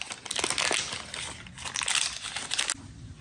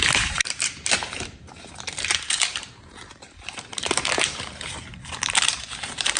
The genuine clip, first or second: first